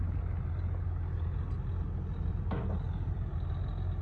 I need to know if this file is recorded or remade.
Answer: recorded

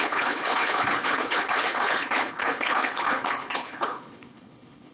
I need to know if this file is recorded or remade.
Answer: remade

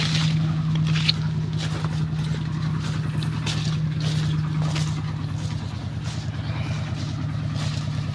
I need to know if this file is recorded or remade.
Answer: recorded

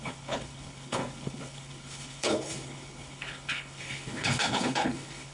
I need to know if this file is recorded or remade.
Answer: remade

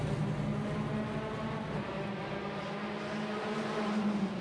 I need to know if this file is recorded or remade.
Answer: recorded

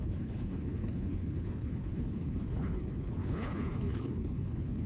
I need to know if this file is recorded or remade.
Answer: remade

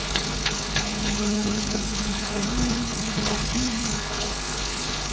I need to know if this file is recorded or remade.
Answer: remade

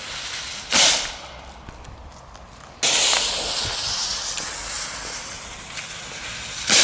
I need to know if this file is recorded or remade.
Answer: recorded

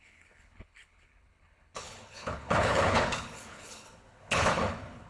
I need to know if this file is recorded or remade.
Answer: remade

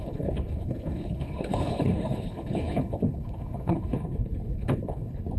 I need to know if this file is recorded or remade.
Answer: remade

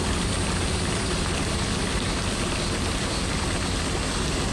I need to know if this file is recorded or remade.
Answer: recorded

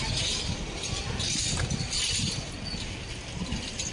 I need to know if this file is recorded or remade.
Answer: recorded